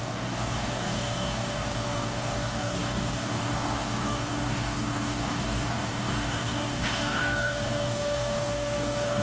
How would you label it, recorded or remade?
remade